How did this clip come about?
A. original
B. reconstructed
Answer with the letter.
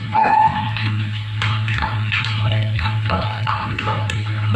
B